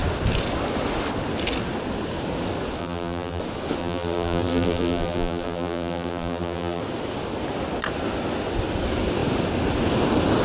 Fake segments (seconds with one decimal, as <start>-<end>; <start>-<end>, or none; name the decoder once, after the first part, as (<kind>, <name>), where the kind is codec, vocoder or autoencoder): 2.8-3.4 (vocoder, BigVGAN v2); 3.8-6.8